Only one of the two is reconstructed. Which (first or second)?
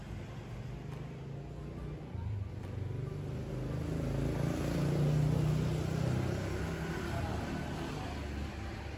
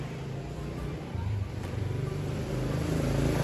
second